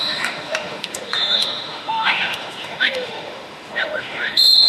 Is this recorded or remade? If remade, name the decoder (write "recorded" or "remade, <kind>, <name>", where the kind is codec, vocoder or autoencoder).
remade, autoencoder, DAC-VAE